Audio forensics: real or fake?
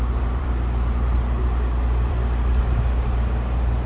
fake